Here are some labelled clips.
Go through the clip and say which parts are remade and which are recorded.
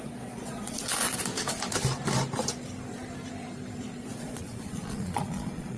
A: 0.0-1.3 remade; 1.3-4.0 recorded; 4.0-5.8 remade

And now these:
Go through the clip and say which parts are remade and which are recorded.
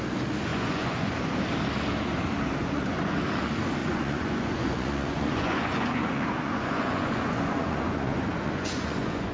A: 0.0-0.5 recorded; 0.5-1.1 remade; 1.1-2.6 recorded; 2.6-3.2 remade; 3.2-3.8 recorded; 3.8-9.3 remade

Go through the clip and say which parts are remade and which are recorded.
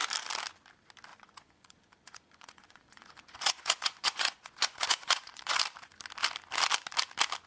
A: 0.0-1.1 recorded; 1.1-5.6 remade; 5.6-7.5 recorded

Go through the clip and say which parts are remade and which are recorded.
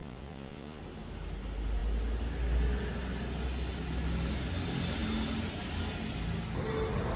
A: 0.0-0.8 remade; 0.8-7.2 recorded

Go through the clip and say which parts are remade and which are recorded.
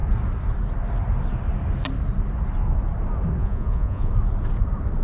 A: 0.0-3.4 recorded; 3.4-4.1 remade; 4.1-5.0 recorded